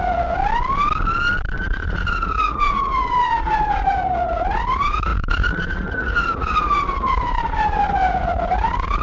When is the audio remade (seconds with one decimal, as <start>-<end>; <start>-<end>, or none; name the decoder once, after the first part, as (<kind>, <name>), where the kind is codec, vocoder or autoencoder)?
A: 0.0-0.4 (vocoder, Vocos); 1.6-9.0